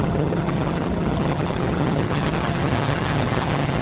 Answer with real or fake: fake